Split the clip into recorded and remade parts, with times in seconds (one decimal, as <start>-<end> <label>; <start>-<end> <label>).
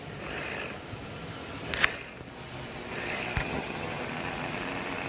0.0-3.4 recorded; 3.4-4.0 remade; 4.0-5.1 recorded